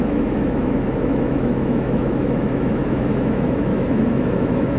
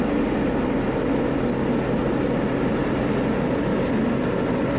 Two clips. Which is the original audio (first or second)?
second